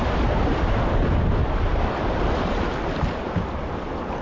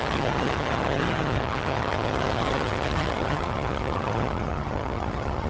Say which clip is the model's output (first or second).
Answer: second